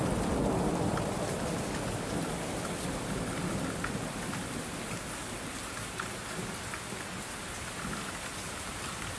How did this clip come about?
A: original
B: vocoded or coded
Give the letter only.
A